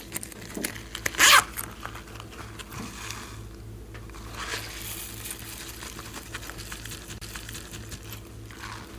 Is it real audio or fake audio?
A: real